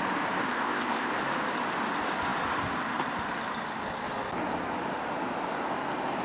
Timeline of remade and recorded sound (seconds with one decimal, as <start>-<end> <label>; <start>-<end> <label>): 0.0-0.5 recorded; 0.5-1.1 remade; 1.1-6.2 recorded

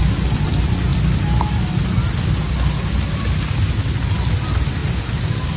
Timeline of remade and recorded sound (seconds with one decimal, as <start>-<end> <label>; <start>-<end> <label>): 0.0-5.6 recorded

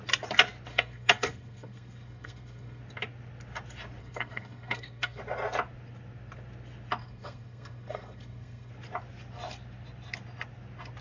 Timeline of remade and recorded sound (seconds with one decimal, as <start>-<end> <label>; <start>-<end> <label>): 0.0-0.7 recorded; 0.7-2.8 remade; 2.8-4.0 recorded; 4.0-5.2 remade; 5.2-7.0 recorded; 7.0-8.7 remade; 8.7-11.0 recorded